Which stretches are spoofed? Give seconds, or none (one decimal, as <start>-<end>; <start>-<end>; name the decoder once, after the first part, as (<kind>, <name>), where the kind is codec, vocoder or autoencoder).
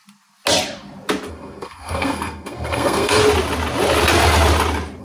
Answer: 1.3-3.2 (codec, SNAC)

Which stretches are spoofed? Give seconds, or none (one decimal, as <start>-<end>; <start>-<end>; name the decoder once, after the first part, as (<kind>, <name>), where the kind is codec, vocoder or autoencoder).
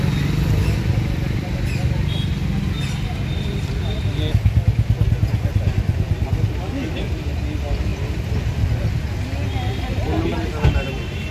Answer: none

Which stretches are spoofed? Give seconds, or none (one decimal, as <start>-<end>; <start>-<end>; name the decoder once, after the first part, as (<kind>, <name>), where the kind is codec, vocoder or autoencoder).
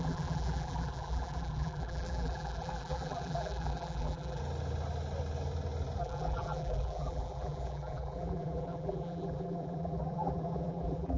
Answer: 0.0-4.4 (vocoder, BigVGAN v2); 6.0-11.2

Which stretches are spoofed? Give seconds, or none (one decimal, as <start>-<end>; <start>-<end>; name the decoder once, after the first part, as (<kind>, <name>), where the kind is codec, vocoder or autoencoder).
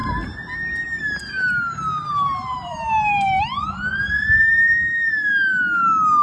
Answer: 2.0-5.1 (vocoder, BigVGAN v2)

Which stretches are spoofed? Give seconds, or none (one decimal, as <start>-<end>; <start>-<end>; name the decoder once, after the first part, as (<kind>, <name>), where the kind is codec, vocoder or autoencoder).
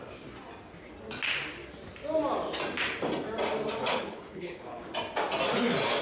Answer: 3.9-4.8 (codec, HILCodec)